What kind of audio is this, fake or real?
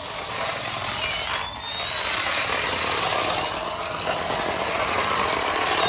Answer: real